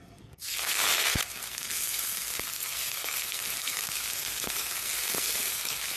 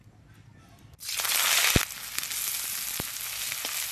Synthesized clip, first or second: first